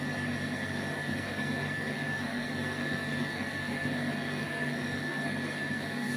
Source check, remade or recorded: remade